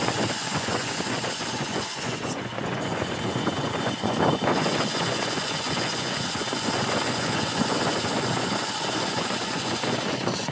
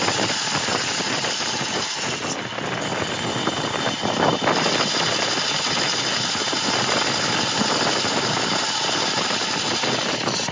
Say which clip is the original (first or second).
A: second